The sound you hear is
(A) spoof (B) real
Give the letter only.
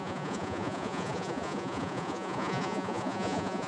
A